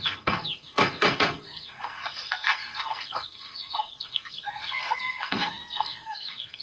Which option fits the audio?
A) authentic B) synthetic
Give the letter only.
B